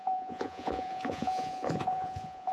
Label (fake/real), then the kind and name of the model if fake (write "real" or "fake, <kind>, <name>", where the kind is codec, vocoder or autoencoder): fake, vocoder, Vocos